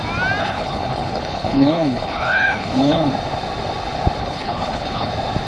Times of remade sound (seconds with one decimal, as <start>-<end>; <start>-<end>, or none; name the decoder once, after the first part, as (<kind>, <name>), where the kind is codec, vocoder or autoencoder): 0.4-3.1 (codec, HILCodec); 4.2-5.1